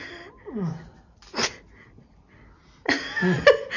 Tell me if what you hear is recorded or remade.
recorded